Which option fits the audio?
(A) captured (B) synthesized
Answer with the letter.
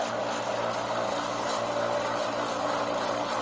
A